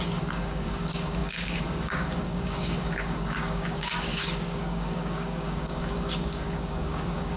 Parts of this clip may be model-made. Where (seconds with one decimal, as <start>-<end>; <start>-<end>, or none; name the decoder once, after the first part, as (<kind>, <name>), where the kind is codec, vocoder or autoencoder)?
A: 0.0-7.4 (codec, DAC)